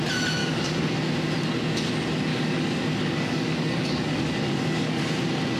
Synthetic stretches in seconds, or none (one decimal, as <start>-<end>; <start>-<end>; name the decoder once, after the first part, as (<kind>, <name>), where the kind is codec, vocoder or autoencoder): 0.4-1.1 (codec, DAC); 2.3-5.0

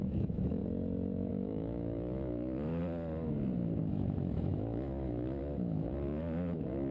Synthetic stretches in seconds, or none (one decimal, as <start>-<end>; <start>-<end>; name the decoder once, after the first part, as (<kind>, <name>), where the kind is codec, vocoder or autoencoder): 0.0-0.6 (autoencoder, DAC-VAE); 1.3-2.8; 3.8-6.9

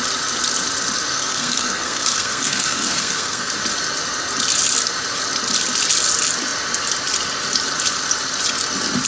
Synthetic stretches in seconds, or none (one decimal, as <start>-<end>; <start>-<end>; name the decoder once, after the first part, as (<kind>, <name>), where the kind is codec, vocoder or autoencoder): 1.1-3.5 (codec, SNAC)

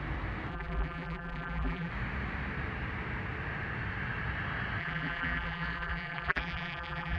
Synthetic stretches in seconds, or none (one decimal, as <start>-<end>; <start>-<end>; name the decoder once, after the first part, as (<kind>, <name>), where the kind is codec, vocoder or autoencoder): 0.5-1.9 (vocoder, BigVGAN v2); 4.8-7.2

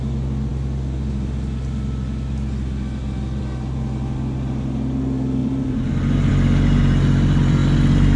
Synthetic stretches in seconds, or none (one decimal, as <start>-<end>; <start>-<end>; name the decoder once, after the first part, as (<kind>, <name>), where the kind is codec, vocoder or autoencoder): 5.4-6.3 (vocoder, BigVGAN v2)

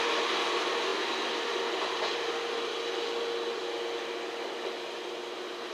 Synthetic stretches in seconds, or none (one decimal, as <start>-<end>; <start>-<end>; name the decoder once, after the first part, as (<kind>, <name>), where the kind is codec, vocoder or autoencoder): none